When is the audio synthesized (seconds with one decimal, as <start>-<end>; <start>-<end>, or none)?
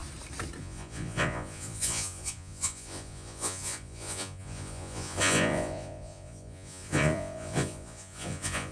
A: 0.6-8.7